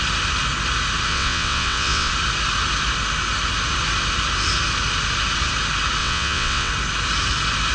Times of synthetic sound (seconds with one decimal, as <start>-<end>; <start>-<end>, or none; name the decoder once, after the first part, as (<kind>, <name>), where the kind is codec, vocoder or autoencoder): 1.1-2.1 (vocoder, WaveNeXt); 6.0-6.7